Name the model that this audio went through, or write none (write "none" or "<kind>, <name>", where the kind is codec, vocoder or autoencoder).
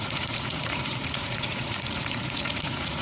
vocoder, Vocos